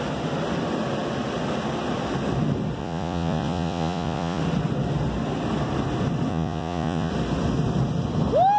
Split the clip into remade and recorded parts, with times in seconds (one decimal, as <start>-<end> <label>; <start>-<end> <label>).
0.0-2.8 recorded; 2.8-4.4 remade; 4.4-6.3 recorded; 6.3-7.1 remade; 7.1-8.6 recorded